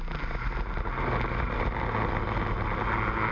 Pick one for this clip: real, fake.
real